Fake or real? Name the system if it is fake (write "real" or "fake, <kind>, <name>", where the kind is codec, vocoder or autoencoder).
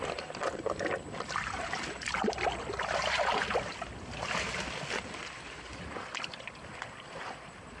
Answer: fake, vocoder, BigVGAN v2